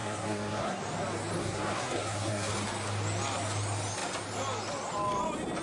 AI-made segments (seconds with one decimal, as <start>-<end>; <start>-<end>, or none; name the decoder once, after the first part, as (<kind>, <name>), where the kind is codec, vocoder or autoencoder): 0.0-0.8 (codec, SNAC); 1.4-2.5